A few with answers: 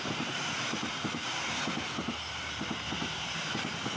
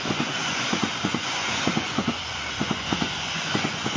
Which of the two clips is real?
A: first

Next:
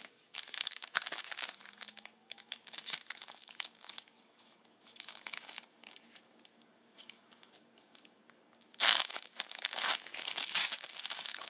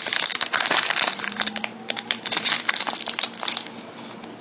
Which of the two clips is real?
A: second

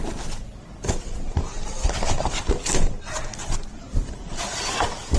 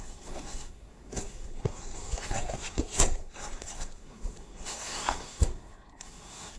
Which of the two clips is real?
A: first